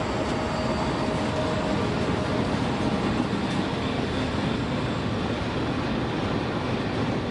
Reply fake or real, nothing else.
real